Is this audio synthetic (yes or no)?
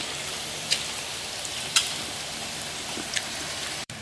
yes